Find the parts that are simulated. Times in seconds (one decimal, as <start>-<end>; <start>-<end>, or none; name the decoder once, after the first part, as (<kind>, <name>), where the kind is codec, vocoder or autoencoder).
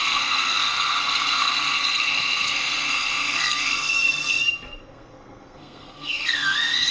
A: 0.0-6.9 (codec, SNAC)